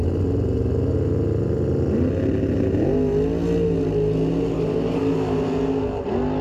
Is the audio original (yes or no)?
yes